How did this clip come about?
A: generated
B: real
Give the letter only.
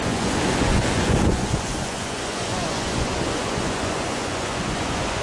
A